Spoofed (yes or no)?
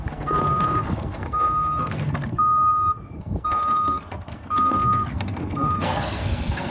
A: yes